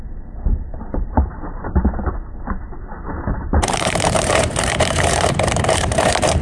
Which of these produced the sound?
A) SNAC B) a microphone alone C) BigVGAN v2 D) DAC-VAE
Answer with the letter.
C